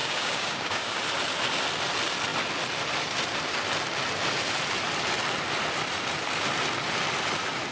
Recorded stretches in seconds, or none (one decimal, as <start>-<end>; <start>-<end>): 1.0-7.7